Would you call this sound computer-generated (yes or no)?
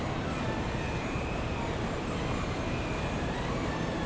no